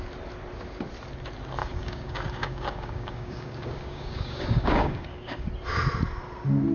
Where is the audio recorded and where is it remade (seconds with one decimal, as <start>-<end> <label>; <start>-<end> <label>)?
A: 0.0-1.6 recorded; 1.6-5.5 remade; 5.5-6.7 recorded